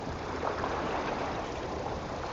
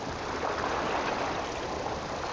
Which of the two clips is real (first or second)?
second